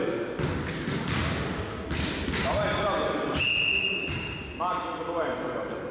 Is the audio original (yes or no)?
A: yes